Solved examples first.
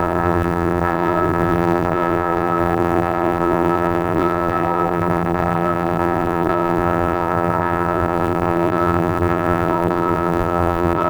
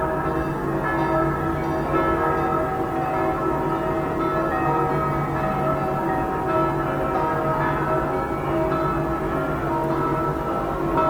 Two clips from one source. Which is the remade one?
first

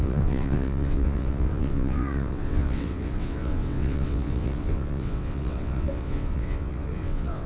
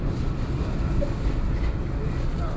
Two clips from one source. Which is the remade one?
first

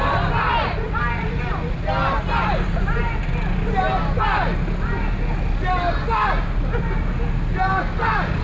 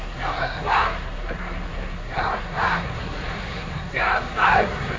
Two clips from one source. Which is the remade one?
second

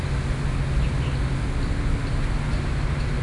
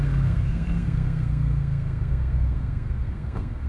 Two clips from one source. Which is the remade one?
second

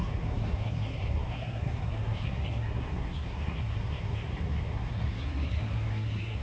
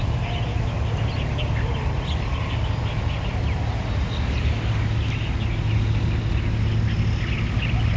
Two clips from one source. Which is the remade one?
first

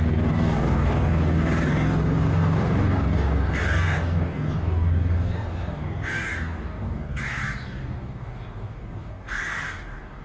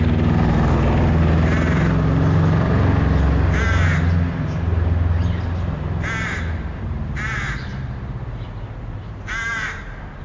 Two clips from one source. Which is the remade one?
first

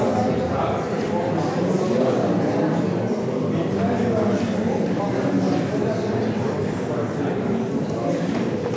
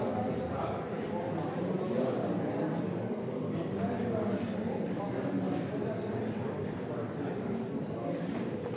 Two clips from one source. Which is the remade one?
second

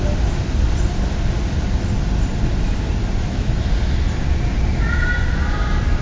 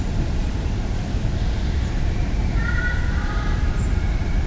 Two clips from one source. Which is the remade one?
second